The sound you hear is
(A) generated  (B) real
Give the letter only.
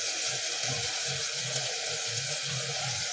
A